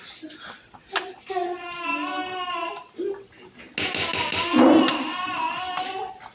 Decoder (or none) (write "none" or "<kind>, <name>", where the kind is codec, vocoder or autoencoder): none